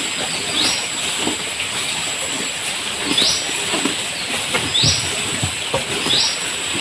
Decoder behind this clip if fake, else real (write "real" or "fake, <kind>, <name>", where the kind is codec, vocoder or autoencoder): real